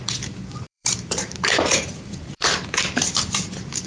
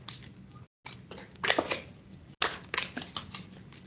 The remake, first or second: first